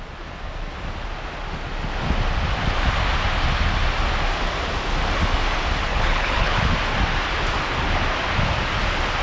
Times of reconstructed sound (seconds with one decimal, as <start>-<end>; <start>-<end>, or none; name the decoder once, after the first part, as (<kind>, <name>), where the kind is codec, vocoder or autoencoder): 5.9-6.7 (codec, HILCodec)